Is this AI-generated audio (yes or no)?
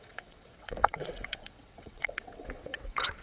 yes